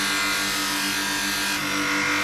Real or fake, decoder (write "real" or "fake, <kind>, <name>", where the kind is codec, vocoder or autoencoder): real